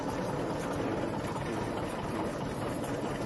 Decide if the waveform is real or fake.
real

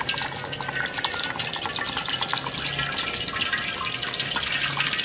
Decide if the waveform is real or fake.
real